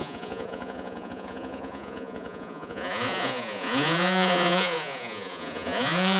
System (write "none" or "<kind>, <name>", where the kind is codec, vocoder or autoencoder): vocoder, Vocos